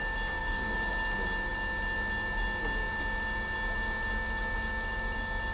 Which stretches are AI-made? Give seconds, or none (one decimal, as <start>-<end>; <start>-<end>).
0.4-0.9